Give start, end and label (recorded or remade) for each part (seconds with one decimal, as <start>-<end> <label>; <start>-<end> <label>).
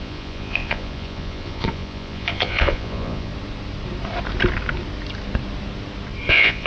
0.0-3.3 remade; 3.3-6.3 recorded; 6.3-6.7 remade